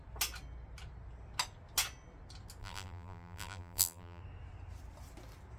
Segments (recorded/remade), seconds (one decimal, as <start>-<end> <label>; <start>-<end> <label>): 0.0-2.6 recorded; 2.6-4.2 remade; 4.2-5.6 recorded